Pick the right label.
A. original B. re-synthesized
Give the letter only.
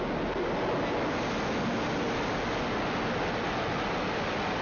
A